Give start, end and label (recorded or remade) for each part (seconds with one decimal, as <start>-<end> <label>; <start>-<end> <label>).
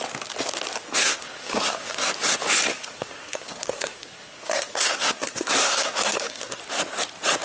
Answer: 0.0-1.0 recorded; 1.0-2.1 remade; 2.1-2.7 recorded; 2.7-6.6 remade; 6.6-7.4 recorded